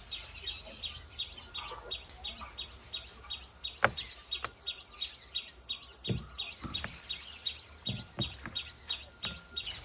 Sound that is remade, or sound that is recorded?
recorded